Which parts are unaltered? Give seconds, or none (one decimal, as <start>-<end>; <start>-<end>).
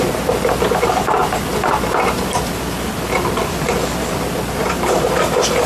none